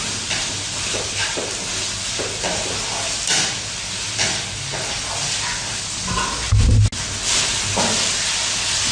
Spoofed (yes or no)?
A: no